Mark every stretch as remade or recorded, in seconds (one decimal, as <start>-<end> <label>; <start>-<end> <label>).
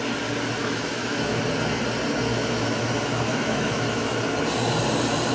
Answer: 0.0-0.6 recorded; 0.6-1.4 remade; 1.4-2.3 recorded; 2.3-4.2 remade; 4.2-5.3 recorded